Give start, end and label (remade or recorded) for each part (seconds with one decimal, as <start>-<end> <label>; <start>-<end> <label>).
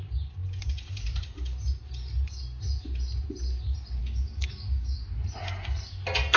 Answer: 0.0-4.0 recorded; 4.0-5.0 remade; 5.0-6.4 recorded